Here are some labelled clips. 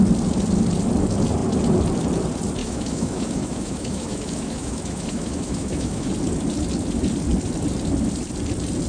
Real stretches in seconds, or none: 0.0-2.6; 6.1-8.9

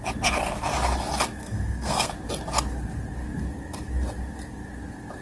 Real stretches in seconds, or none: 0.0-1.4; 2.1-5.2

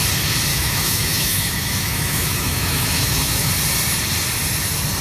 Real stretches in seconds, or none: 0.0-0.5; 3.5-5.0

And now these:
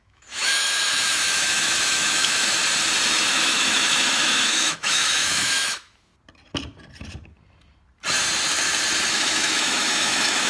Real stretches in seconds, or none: 2.6-3.3; 6.1-9.1

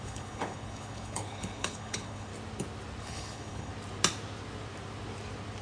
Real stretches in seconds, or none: 2.3-3.0; 3.7-5.6

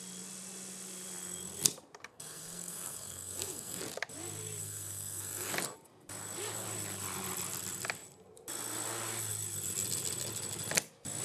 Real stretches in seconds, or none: 0.0-2.1; 3.8-4.6; 5.5-11.2